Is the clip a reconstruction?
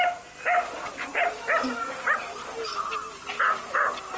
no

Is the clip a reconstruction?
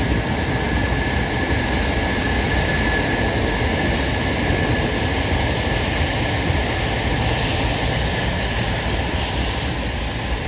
no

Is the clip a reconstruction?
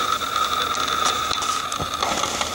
no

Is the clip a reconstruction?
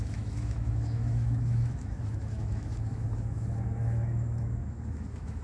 yes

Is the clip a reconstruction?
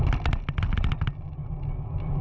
no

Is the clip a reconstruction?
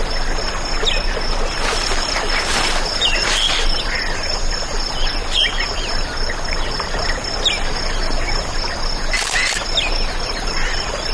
no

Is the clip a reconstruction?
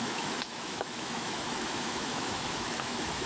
yes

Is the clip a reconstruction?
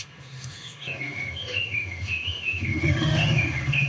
yes